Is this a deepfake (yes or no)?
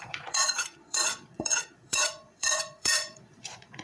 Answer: yes